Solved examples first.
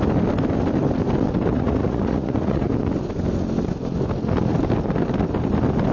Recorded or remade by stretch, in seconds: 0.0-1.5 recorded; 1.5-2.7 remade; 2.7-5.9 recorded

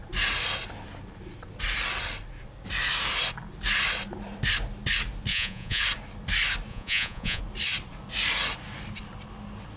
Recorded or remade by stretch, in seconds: 0.0-5.3 recorded; 5.3-5.8 remade; 5.8-6.7 recorded; 6.7-7.4 remade; 7.4-9.8 recorded

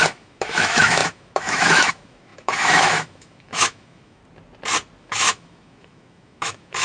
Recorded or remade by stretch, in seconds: 0.0-4.2 remade; 4.2-5.0 recorded; 5.0-6.8 remade

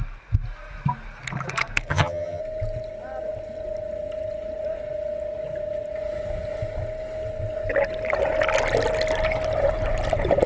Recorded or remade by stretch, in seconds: 0.0-1.9 recorded; 1.9-2.4 remade; 2.4-10.5 recorded

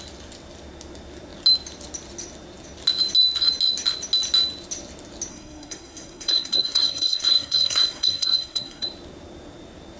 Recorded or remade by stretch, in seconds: 0.0-5.3 recorded; 5.3-8.9 remade; 8.9-10.0 recorded

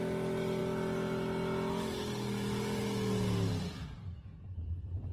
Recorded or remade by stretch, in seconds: 0.0-5.1 recorded